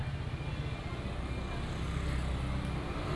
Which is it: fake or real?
real